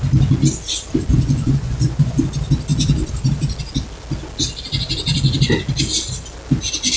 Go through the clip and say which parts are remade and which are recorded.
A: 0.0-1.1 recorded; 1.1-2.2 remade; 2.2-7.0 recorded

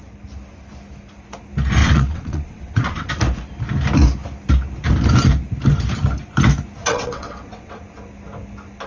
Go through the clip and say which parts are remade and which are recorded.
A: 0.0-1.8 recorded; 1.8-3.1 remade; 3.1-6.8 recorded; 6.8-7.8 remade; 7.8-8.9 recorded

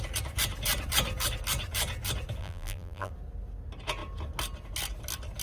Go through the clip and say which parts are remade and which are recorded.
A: 0.0-2.4 recorded; 2.4-3.1 remade; 3.1-5.4 recorded

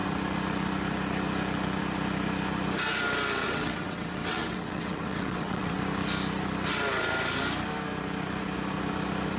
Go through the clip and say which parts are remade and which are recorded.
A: 0.0-3.4 recorded; 3.4-5.8 remade; 5.8-9.4 recorded